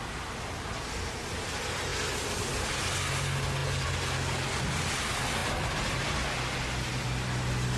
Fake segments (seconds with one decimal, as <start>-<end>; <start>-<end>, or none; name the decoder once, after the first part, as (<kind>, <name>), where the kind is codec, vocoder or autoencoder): none